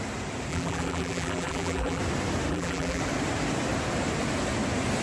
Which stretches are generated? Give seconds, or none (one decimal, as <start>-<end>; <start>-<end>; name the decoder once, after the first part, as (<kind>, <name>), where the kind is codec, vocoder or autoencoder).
0.5-2.0 (vocoder, BigVGAN v2); 2.5-3.0